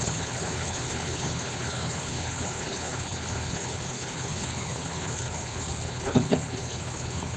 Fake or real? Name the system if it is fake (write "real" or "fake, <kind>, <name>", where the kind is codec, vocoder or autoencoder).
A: fake, codec, HILCodec